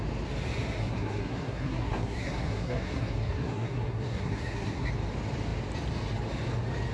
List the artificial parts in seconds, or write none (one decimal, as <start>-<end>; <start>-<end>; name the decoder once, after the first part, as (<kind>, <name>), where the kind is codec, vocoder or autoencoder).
0.8-4.9 (codec, SNAC)

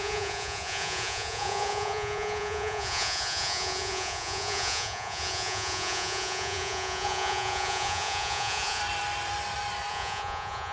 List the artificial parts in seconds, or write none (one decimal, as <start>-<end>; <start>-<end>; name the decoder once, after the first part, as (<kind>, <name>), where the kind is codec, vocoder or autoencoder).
0.0-8.8 (vocoder, Vocos); 9.9-10.7

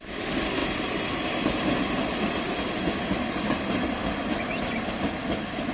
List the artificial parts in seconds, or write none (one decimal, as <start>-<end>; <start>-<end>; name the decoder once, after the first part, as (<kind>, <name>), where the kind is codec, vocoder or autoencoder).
none

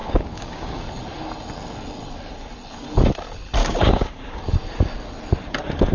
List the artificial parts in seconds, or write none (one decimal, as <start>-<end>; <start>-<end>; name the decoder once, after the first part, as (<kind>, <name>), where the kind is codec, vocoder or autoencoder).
0.0-0.8 (codec, DAC); 3.6-4.4

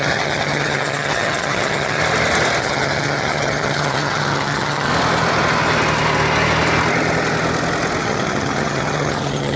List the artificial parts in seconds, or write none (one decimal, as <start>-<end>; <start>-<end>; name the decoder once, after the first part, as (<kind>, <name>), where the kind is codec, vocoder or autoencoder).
0.0-2.0 (vocoder, HiFi-GAN); 2.6-4.9; 8.0-9.6

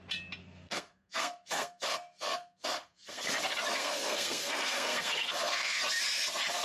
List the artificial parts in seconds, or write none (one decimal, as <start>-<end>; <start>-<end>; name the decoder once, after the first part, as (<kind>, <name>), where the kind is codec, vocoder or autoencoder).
0.4-3.3 (codec, SNAC); 3.8-5.8

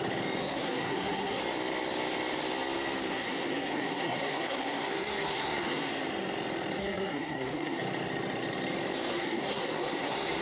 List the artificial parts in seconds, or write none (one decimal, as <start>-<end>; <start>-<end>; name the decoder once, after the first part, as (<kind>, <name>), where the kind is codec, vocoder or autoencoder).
0.4-1.4 (codec, SNAC); 3.1-5.9; 6.8-7.8; 9.1-10.4

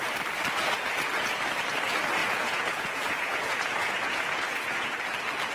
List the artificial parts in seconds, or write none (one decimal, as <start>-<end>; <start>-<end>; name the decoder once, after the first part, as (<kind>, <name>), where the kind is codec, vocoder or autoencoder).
2.2-5.0 (vocoder, Vocos)